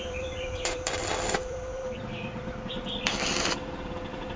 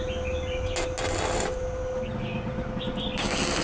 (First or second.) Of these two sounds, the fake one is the first